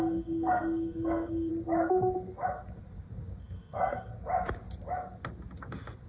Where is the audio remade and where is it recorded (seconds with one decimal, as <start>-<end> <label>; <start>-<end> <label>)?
0.0-1.5 remade; 1.5-3.4 recorded; 3.4-4.1 remade; 4.1-6.1 recorded